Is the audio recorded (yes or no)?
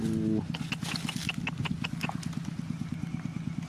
yes